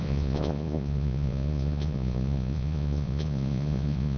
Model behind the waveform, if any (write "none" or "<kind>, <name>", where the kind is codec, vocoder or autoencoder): vocoder, Vocos